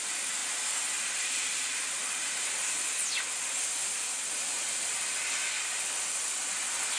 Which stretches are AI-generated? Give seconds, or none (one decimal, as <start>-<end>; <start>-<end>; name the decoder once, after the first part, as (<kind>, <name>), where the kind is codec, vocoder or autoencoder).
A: 0.4-2.3 (vocoder, BigVGAN v2)